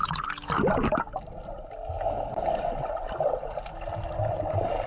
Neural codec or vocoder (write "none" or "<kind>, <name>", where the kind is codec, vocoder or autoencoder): none